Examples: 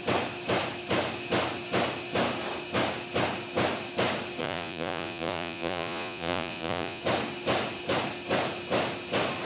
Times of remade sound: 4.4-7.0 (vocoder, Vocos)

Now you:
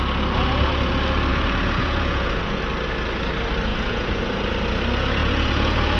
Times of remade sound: 1.3-2.6 (vocoder, Vocos); 3.7-4.3; 5.2-6.0